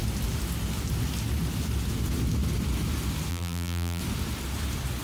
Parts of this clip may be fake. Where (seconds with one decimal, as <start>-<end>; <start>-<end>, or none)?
3.3-4.0